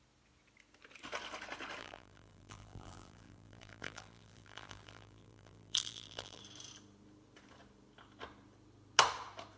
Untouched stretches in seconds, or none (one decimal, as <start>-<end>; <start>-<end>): 0.0-1.8; 6.4-9.6